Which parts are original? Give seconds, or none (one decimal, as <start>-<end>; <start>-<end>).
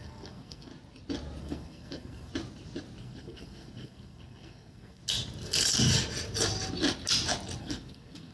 0.7-1.4; 2.3-3.0; 5.0-7.6